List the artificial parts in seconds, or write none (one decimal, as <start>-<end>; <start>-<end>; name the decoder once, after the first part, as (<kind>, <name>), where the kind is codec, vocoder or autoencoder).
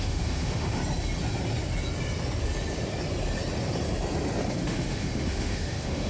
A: 0.0-0.8 (autoencoder, DAC-VAE); 4.5-6.1